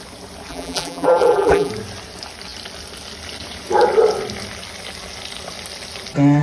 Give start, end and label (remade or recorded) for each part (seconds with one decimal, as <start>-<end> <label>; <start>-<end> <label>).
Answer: 0.0-0.5 recorded; 0.5-1.7 remade; 1.7-6.4 recorded